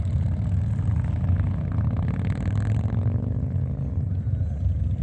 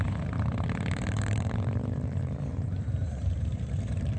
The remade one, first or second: second